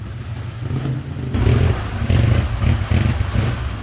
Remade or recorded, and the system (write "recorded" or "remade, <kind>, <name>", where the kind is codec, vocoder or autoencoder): recorded